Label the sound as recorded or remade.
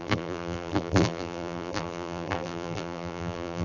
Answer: remade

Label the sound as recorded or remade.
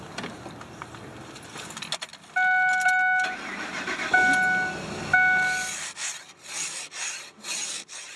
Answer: recorded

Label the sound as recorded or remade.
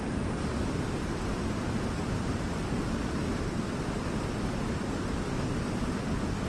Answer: recorded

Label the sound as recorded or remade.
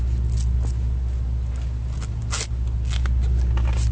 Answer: recorded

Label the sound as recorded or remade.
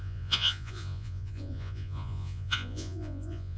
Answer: remade